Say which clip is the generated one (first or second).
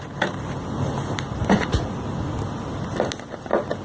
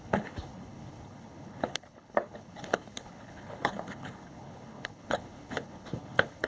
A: second